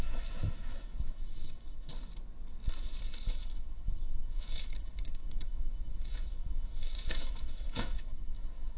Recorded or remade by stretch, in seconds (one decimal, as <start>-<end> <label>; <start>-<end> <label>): 0.0-1.9 remade; 1.9-3.3 recorded; 3.3-8.8 remade

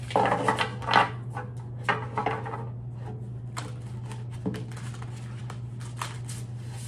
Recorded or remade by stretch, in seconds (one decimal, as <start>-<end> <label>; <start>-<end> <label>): 0.0-6.9 recorded

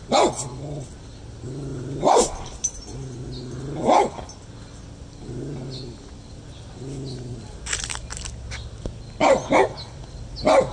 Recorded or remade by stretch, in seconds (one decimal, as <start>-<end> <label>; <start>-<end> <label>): 0.0-1.7 recorded; 1.7-2.8 remade; 2.8-10.7 recorded

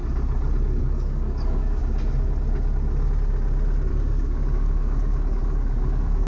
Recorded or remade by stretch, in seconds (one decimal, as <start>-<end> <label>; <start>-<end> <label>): 0.0-0.8 recorded; 0.8-1.8 remade; 1.8-3.9 recorded; 3.9-6.3 remade

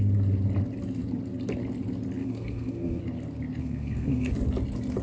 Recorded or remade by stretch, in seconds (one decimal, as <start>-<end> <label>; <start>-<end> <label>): 0.0-2.2 recorded; 2.2-3.0 remade; 3.0-3.6 recorded; 3.6-4.3 remade; 4.3-5.0 recorded

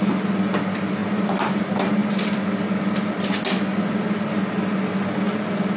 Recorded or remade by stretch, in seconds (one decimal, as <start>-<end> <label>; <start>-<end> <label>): 0.0-5.8 recorded

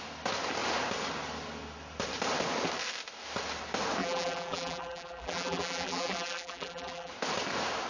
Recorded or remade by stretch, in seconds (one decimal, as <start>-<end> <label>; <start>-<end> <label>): 0.0-4.0 recorded; 4.0-7.1 remade; 7.1-7.9 recorded